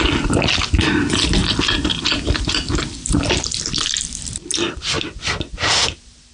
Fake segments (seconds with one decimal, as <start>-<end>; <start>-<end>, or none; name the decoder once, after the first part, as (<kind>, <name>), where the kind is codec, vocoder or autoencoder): 1.4-4.3 (vocoder, BigVGAN v2)